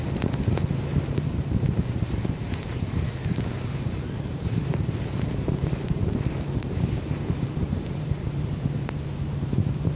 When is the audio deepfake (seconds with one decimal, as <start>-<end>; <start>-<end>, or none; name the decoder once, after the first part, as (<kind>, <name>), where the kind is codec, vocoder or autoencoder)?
0.0-10.0 (vocoder, BigVGAN v2)